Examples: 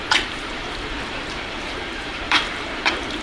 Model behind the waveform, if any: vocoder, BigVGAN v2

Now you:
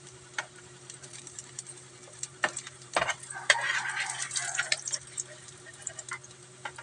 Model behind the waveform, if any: vocoder, BigVGAN v2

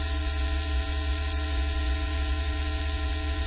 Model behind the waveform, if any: vocoder, WaveNeXt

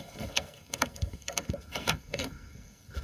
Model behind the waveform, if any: codec, SNAC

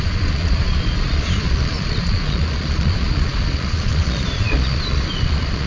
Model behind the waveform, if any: vocoder, Vocos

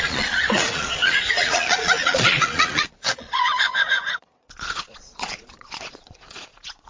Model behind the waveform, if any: vocoder, Vocos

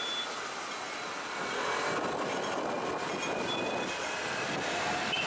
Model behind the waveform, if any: none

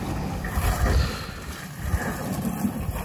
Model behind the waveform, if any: vocoder, BigVGAN v2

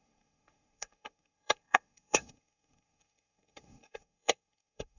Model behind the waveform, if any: codec, SNAC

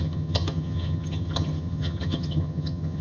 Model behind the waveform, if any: vocoder, HiFi-GAN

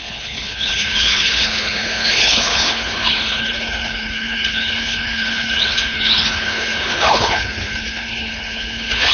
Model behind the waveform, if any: codec, HILCodec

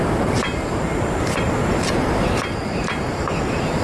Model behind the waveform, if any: vocoder, BigVGAN v2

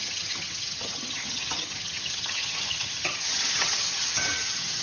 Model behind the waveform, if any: vocoder, HiFi-GAN